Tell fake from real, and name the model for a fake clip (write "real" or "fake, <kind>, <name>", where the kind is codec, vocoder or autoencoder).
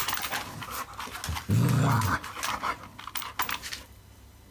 real